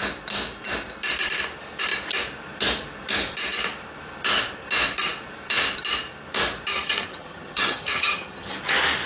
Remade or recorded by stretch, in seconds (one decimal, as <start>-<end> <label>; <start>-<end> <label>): 0.0-6.7 recorded; 6.7-8.6 remade; 8.6-9.1 recorded